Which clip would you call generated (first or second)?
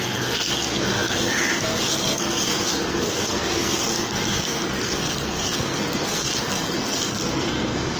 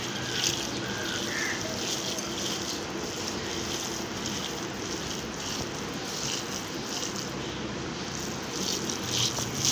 first